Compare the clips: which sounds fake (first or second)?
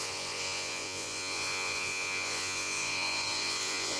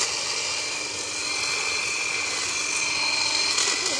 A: first